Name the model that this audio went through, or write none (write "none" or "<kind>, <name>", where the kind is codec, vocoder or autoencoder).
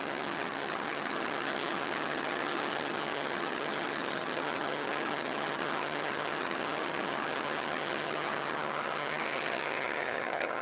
vocoder, HiFi-GAN